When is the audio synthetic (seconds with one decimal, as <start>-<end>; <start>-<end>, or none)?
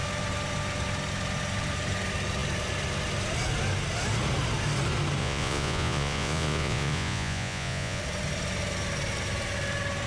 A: 5.2-8.0